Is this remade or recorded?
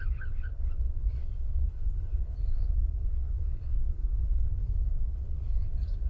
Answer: remade